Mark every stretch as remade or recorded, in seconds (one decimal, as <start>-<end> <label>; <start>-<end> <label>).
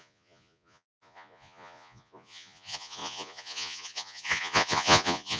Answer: 0.0-5.4 remade